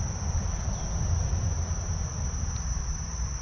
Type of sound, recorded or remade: recorded